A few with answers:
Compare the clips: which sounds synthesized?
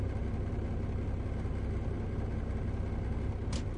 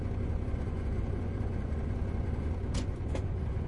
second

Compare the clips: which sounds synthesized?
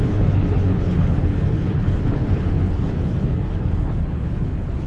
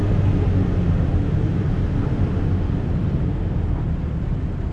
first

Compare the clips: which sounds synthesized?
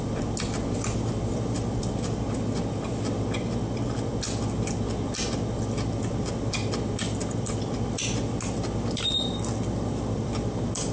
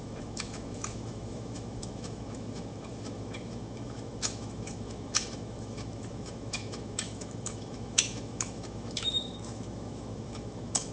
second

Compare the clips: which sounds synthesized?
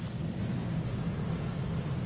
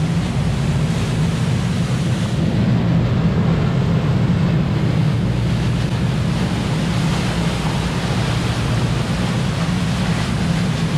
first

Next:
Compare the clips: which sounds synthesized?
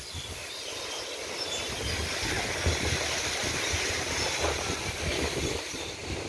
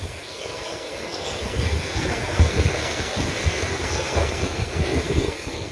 second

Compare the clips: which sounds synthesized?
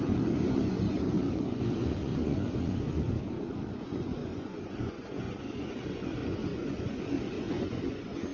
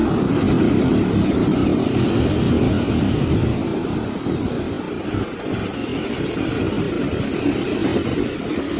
first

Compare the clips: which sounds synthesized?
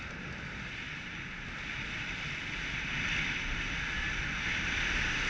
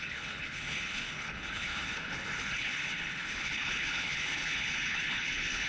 second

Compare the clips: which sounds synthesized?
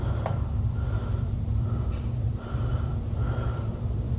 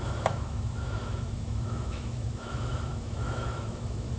second